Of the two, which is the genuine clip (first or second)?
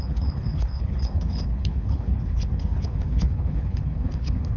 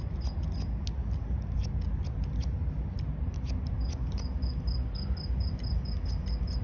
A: second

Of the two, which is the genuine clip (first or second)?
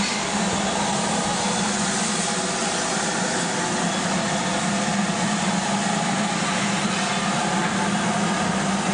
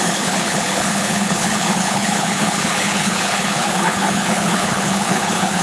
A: first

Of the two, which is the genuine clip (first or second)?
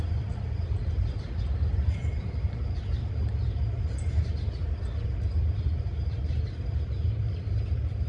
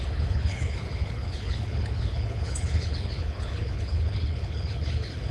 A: first